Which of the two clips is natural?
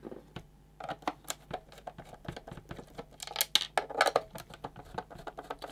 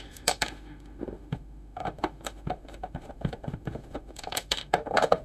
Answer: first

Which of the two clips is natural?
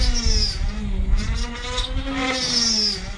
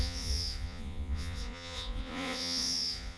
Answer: first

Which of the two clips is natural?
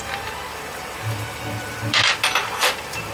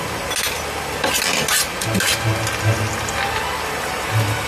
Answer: second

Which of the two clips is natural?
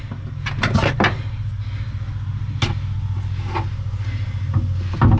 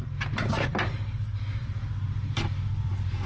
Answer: first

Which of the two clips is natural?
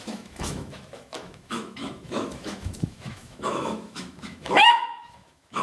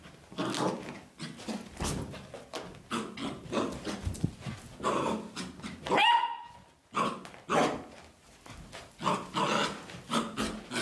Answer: second